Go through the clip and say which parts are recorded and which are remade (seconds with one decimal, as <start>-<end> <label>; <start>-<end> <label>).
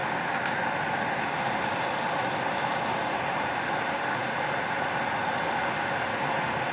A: 0.0-6.7 recorded